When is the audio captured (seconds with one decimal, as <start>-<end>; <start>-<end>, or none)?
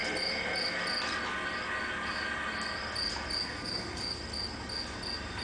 0.0-3.4; 4.0-5.4